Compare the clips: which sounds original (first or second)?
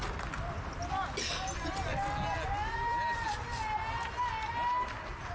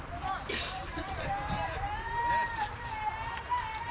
first